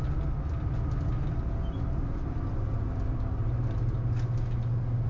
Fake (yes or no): no